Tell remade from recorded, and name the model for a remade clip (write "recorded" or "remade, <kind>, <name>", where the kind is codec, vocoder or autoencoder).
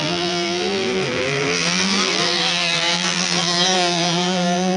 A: remade, vocoder, BigVGAN v2